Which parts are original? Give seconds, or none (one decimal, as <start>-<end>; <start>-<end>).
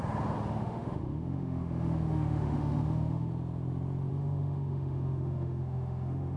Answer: 0.0-0.6; 3.3-4.1